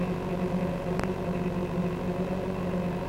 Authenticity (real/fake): real